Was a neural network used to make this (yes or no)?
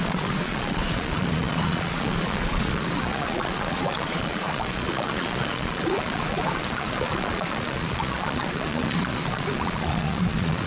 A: yes